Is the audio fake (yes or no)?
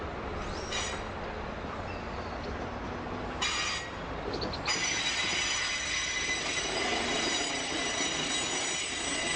no